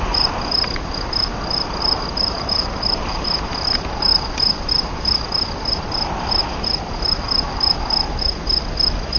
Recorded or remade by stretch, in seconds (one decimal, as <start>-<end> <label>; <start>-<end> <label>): 0.0-9.2 recorded